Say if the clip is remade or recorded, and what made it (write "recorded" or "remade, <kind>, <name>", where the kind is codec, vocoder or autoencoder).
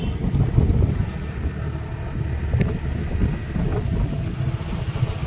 recorded